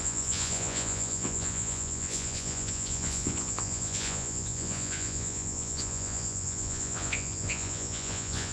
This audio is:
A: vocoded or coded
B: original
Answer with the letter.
A